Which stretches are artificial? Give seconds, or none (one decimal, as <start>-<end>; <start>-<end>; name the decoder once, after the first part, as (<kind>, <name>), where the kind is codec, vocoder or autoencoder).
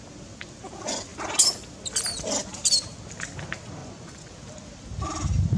3.8-4.3 (vocoder, Vocos)